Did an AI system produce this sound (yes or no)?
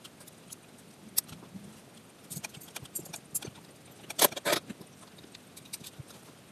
no